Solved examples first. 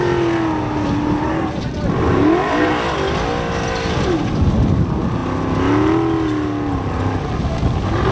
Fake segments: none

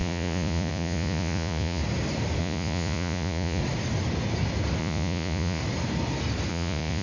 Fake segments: 0.0-1.8 (vocoder, Vocos); 2.4-3.6; 4.8-5.6; 6.5-7.0

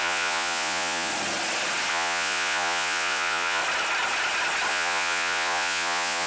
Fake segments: 0.0-1.1 (vocoder, Vocos); 1.9-3.6; 4.7-6.3